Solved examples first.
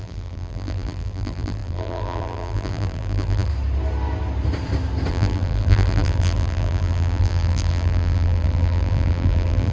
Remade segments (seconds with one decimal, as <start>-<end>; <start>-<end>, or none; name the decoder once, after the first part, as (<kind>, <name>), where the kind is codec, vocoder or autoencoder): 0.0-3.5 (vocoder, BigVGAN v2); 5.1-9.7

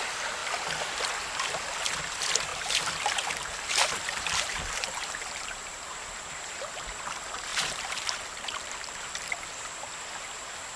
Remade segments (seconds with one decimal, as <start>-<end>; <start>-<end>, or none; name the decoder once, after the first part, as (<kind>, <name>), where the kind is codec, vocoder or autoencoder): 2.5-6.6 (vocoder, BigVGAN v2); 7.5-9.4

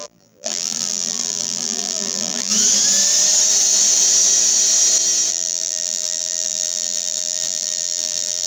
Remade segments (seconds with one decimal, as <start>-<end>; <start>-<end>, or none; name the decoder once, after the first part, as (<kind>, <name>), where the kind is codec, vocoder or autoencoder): 0.0-2.5 (vocoder, BigVGAN v2); 5.3-8.5

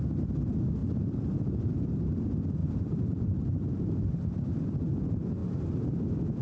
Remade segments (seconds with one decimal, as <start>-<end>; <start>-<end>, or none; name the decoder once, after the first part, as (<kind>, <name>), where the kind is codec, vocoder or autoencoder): 2.6-4.5 (vocoder, BigVGAN v2); 5.4-6.0

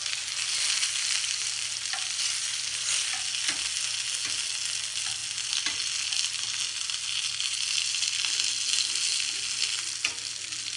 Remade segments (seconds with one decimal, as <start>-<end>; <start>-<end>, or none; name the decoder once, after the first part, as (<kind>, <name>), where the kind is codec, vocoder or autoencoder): none

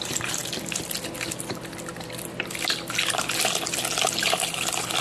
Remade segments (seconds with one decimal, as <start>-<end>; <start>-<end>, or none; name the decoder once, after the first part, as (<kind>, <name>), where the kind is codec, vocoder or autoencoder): none

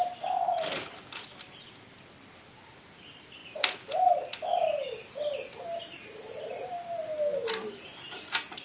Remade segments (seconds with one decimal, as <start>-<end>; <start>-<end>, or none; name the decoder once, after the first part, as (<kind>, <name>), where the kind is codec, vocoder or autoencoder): none